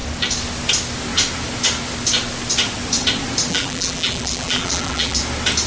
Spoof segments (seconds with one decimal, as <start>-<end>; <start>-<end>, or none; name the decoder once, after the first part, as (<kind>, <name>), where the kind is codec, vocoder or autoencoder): 3.5-5.2 (vocoder, BigVGAN v2)